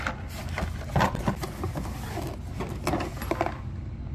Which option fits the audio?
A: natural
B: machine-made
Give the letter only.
A